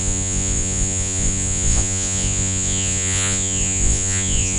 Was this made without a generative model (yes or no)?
no